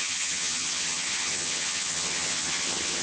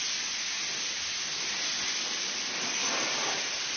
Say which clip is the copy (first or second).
first